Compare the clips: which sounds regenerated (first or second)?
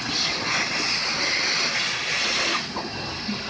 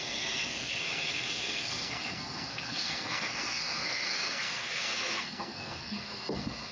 second